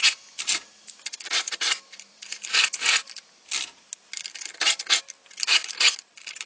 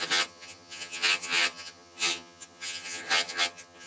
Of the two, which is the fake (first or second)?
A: second